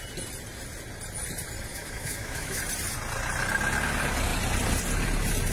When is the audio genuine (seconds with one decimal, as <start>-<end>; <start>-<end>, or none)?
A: 0.0-1.7; 2.6-5.5

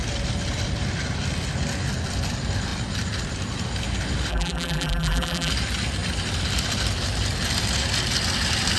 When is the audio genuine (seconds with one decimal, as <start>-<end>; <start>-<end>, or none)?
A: 0.0-4.3; 5.5-8.8